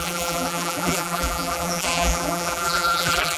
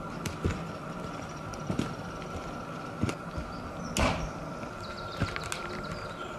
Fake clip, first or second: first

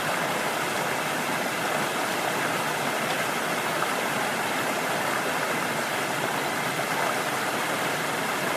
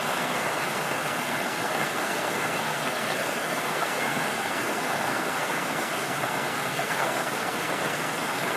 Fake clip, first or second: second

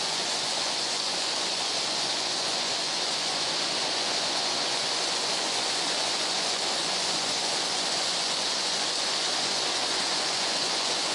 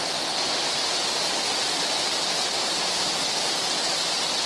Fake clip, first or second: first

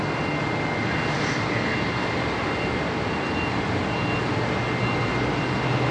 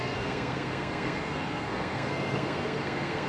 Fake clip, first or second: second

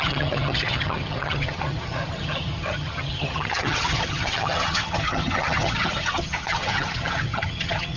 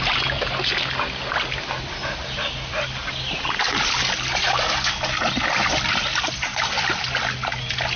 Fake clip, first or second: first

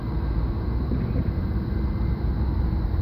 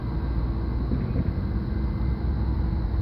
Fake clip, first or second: first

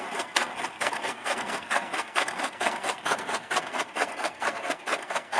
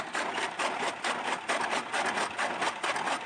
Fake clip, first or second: first